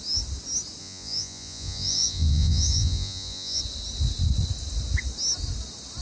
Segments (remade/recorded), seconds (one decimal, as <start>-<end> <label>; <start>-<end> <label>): 0.0-0.8 recorded; 0.8-3.6 remade; 3.6-6.0 recorded